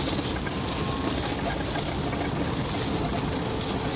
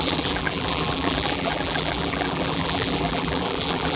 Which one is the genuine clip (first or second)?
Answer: first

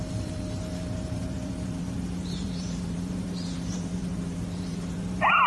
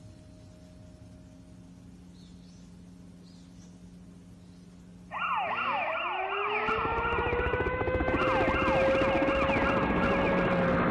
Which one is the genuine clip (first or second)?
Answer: second